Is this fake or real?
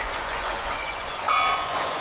fake